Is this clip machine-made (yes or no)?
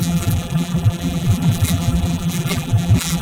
yes